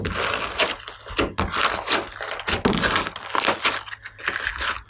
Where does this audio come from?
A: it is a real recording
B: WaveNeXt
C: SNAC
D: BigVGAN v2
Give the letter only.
A